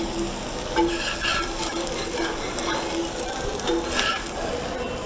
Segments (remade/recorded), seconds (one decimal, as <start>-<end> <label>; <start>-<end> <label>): 0.0-1.3 recorded; 1.3-2.2 remade; 2.2-5.1 recorded